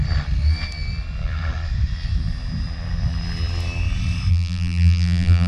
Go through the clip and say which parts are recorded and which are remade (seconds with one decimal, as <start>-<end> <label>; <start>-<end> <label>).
0.0-4.3 recorded; 4.3-5.5 remade